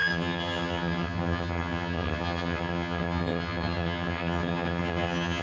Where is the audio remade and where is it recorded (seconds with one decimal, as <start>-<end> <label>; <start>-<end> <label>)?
0.0-5.4 remade